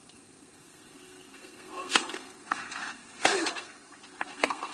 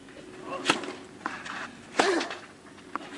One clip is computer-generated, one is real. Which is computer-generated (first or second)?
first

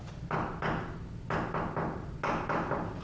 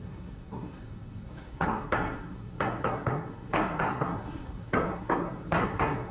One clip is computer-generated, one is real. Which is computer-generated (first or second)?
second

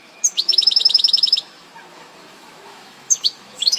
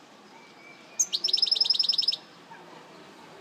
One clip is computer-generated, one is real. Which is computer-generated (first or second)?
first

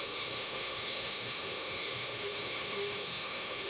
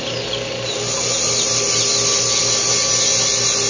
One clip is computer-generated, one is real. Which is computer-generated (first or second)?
first